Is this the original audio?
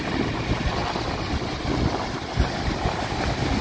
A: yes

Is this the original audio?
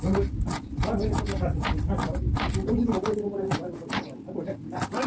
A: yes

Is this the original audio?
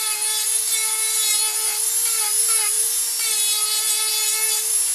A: yes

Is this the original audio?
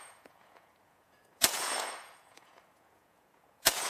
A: no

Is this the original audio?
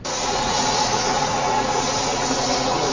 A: no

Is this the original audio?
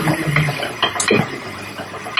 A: yes